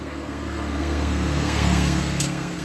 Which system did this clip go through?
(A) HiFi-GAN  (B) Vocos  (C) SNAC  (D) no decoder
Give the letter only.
C